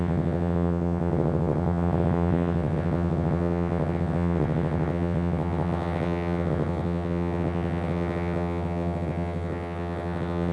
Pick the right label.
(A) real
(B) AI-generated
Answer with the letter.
B